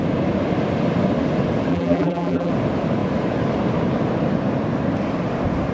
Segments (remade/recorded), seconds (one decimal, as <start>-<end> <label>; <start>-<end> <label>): 0.0-1.7 recorded; 1.7-2.5 remade; 2.5-5.7 recorded